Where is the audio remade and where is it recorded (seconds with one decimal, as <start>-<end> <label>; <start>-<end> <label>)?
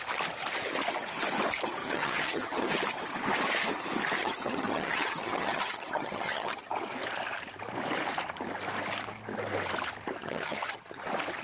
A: 0.0-1.8 recorded; 1.8-2.7 remade; 2.7-4.2 recorded; 4.2-6.7 remade; 6.7-10.2 recorded; 10.2-11.0 remade; 11.0-11.4 recorded